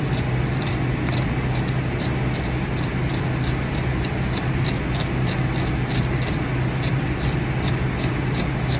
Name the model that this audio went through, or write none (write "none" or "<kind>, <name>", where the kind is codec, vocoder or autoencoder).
none